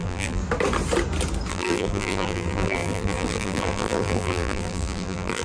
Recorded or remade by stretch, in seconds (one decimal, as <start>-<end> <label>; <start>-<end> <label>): 0.0-0.4 remade; 0.4-1.5 recorded; 1.5-5.4 remade